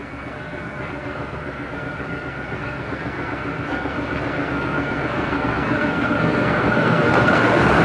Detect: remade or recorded remade